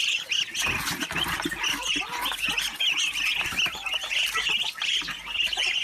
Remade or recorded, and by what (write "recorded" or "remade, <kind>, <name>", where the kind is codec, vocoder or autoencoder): recorded